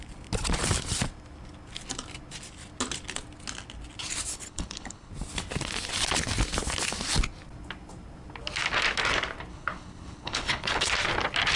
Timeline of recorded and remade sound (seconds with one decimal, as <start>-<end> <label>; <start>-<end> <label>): 0.0-4.3 recorded; 4.3-5.1 remade; 5.1-9.5 recorded; 9.5-10.9 remade; 10.9-11.6 recorded